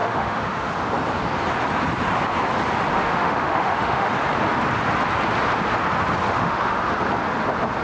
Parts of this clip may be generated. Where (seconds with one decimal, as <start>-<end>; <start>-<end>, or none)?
0.0-0.7; 2.9-4.1; 6.3-6.8